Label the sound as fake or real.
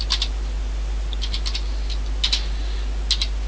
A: real